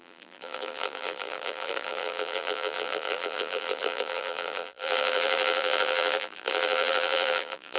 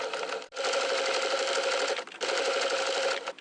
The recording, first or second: second